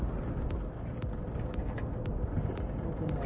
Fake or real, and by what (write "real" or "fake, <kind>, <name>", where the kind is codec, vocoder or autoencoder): real